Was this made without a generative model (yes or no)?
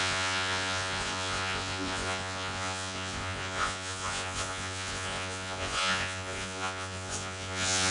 no